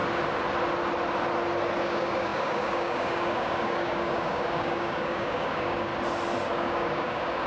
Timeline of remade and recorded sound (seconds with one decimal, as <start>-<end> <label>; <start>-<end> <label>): 0.0-1.8 recorded; 1.8-5.9 remade; 5.9-6.5 recorded; 6.5-7.5 remade